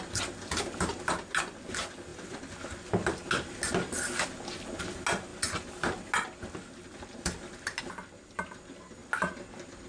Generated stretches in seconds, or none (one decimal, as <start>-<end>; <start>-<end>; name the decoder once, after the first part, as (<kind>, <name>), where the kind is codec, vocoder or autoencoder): none